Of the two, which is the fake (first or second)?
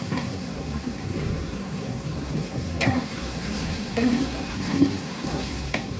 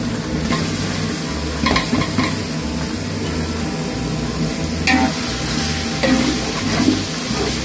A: first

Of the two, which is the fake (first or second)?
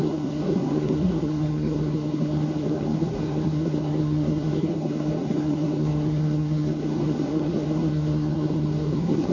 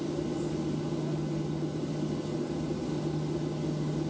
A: first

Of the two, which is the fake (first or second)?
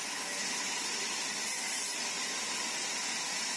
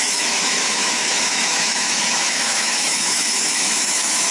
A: second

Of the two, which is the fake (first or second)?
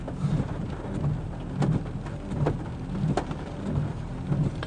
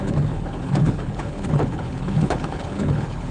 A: second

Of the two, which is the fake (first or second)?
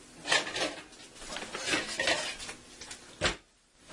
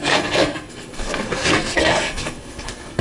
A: second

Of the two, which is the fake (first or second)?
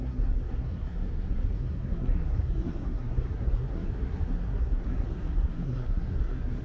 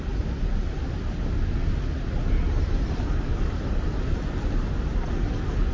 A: first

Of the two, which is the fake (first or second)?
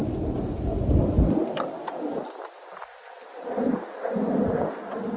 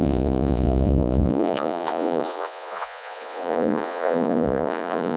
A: second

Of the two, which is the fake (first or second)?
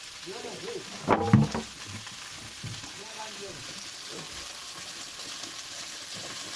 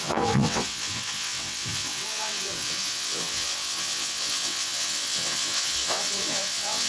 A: second